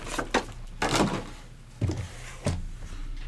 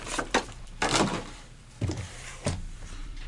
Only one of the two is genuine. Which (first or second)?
first